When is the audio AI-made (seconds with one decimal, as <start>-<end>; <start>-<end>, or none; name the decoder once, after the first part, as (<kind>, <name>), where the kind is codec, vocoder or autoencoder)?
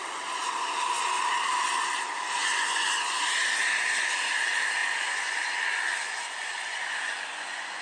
2.4-3.2 (vocoder, Vocos); 4.8-7.8